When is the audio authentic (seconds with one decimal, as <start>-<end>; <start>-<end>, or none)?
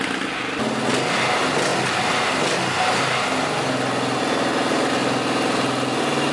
0.0-6.3